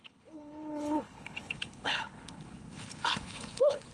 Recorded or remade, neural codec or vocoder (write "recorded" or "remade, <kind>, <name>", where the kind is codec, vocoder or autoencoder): remade, codec, HILCodec